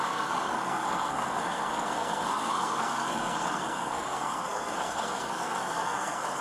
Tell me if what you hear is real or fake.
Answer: fake